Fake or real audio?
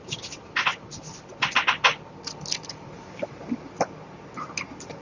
real